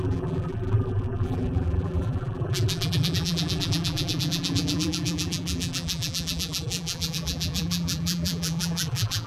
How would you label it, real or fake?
fake